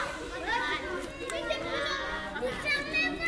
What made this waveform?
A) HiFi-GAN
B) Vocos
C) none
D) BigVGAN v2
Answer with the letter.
C